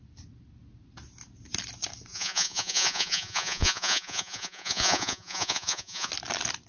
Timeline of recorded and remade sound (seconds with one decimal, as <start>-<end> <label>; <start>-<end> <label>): 0.0-2.1 recorded; 2.1-6.1 remade; 6.1-6.7 recorded